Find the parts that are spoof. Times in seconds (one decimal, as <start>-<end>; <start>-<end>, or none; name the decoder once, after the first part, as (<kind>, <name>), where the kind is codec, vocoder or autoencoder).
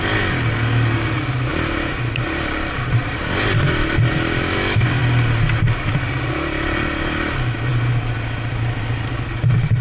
1.5-3.3 (vocoder, BigVGAN v2)